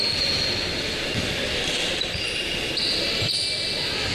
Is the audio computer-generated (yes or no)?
no